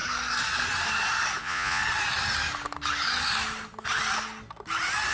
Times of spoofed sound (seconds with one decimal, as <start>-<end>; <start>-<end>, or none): 1.4-1.8